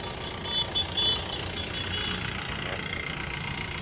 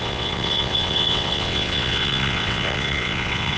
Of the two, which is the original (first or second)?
first